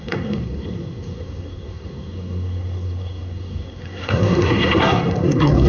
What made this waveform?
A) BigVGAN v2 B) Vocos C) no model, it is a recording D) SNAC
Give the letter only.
D